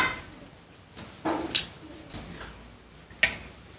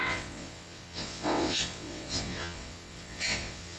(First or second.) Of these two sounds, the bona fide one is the first